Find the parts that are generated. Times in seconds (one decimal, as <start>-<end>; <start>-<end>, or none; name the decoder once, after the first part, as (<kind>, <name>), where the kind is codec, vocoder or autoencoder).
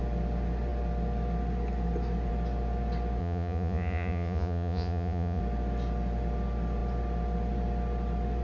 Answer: 3.2-5.4 (vocoder, Vocos)